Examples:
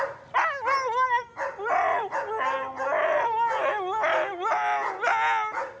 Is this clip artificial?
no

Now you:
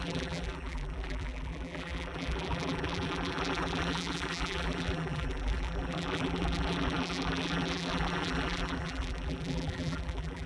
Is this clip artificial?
yes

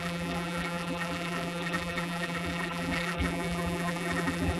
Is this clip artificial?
yes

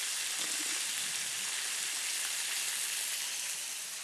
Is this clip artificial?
no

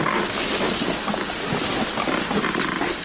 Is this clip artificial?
no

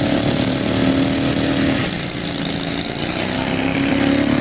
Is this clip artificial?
no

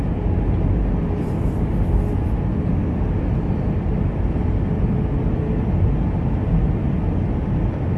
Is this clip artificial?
no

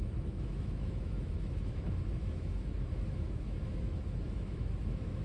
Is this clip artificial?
yes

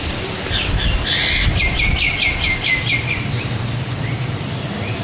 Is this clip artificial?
no